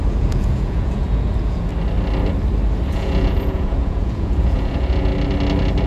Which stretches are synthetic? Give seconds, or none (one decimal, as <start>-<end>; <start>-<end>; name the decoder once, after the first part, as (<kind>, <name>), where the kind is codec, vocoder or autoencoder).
0.0-1.7 (vocoder, Vocos); 2.9-5.1